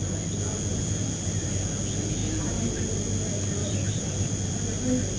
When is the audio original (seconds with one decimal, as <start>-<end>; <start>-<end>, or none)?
0.0-0.7; 1.5-2.2; 2.8-3.6; 4.5-5.2